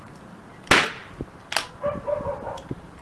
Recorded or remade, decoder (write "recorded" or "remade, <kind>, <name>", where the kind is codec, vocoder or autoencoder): recorded